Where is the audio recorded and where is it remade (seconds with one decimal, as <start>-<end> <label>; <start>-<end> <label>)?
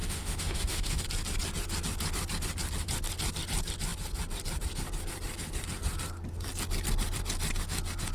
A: 0.0-1.0 remade; 1.0-8.1 recorded